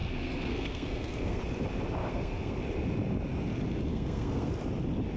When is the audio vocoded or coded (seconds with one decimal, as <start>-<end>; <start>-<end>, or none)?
0.0-1.4; 2.0-2.6; 3.9-4.5